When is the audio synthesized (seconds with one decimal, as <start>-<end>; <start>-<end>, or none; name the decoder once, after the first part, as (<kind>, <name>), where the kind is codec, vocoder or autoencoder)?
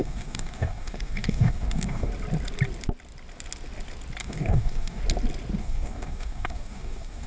0.0-2.1 (codec, DAC); 4.2-5.0; 5.6-7.3